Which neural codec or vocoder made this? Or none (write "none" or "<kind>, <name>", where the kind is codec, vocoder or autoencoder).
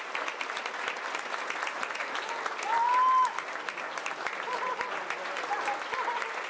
none